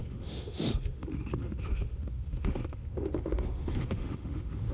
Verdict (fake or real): fake